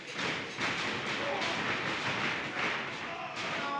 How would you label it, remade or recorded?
recorded